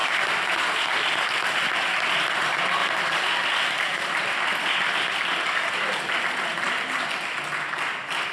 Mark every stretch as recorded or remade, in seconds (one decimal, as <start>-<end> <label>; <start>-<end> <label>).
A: 0.0-2.8 recorded; 2.8-5.7 remade; 5.7-8.3 recorded